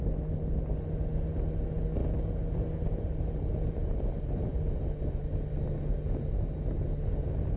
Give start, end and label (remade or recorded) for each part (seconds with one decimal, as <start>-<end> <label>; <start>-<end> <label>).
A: 0.0-7.6 recorded